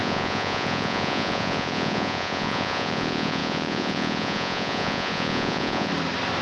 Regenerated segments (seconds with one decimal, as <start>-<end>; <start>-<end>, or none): 0.0-5.9